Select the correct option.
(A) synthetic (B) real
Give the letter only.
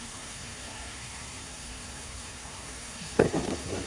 A